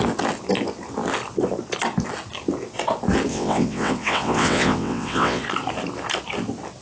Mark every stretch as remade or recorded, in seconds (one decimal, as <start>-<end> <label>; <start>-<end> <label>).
0.0-3.3 recorded; 3.3-5.4 remade; 5.4-6.8 recorded